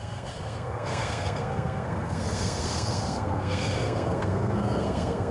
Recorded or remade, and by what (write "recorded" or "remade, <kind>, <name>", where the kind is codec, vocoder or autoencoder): remade, codec, SNAC